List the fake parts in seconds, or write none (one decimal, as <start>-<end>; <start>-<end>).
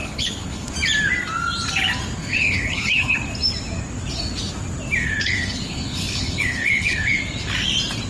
0.0-0.7; 2.2-3.2; 5.0-7.2